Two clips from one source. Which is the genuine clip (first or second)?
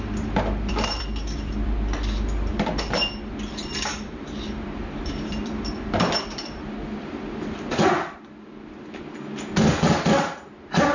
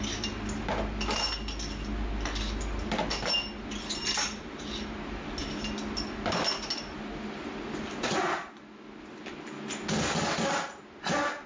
second